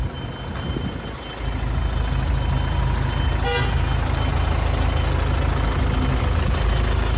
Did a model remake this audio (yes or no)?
no